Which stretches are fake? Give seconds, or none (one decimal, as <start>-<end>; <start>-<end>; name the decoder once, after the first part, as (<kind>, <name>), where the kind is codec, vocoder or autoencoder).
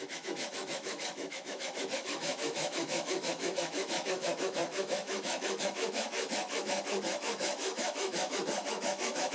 0.0-9.3 (autoencoder, DAC-VAE)